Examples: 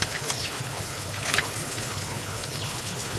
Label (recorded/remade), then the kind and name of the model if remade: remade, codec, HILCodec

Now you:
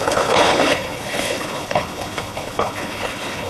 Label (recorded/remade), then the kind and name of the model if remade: remade, codec, HILCodec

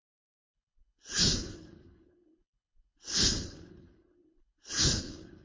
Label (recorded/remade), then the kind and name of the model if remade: remade, codec, HILCodec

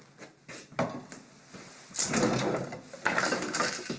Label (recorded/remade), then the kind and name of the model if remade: recorded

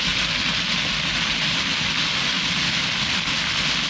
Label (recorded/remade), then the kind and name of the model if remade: recorded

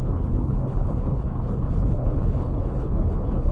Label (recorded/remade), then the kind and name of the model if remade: remade, codec, HILCodec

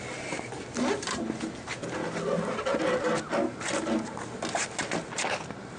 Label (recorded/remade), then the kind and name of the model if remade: recorded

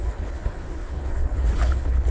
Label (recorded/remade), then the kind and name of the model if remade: remade, codec, HILCodec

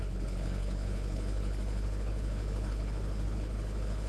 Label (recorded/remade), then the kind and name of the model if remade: remade, codec, HILCodec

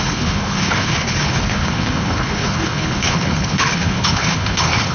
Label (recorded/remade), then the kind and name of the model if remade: remade, codec, HILCodec